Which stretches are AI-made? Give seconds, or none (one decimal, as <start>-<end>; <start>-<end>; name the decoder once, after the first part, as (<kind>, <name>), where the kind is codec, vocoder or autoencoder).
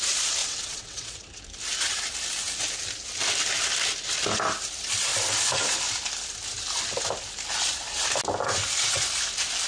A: 0.4-1.4 (vocoder, WaveNeXt)